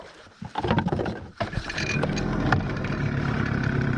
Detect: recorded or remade recorded